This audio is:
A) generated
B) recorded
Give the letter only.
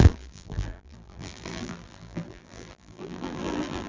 A